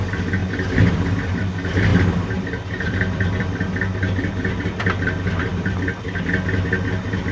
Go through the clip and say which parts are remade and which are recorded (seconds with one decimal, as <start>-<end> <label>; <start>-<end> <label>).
0.0-1.9 recorded; 1.9-6.2 remade; 6.2-7.3 recorded